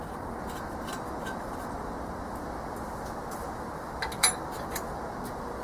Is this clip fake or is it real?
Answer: real